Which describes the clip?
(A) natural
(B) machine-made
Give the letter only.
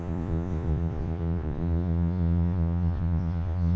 B